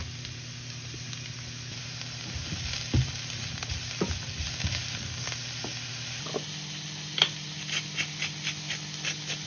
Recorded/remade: recorded